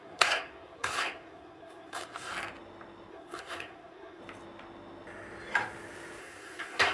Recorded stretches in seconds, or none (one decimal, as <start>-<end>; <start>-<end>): 2.3-3.1; 4.2-6.2